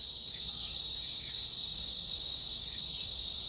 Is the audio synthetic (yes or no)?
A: yes